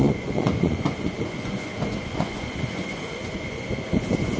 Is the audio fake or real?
fake